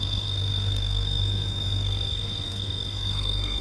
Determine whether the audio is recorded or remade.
remade